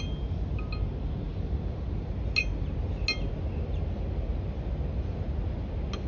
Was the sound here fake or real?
real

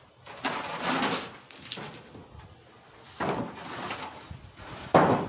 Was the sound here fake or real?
real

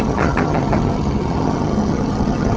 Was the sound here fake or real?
fake